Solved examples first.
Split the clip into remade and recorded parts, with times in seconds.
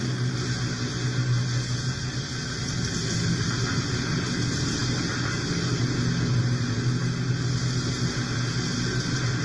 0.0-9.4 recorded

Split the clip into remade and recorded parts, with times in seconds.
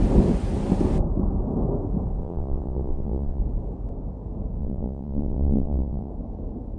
0.0-2.2 recorded; 2.2-3.4 remade; 3.4-4.6 recorded; 4.6-6.1 remade; 6.1-6.8 recorded